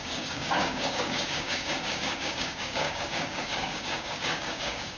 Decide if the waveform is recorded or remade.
remade